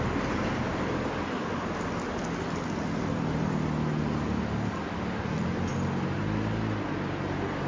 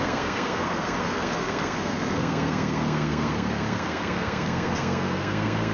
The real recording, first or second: first